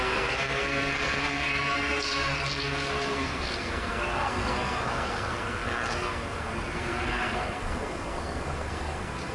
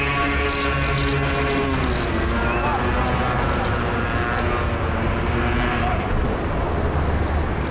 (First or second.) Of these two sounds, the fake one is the first